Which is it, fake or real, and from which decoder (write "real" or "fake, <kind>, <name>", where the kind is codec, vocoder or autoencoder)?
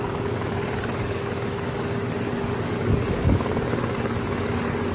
fake, codec, DAC